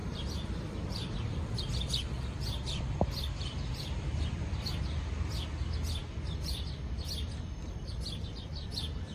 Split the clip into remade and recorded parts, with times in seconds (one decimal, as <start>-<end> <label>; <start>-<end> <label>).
0.0-4.8 remade; 4.8-6.0 recorded; 6.0-7.8 remade; 7.8-9.1 recorded